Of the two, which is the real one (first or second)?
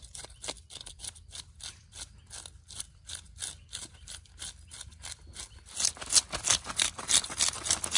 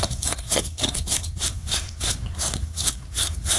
first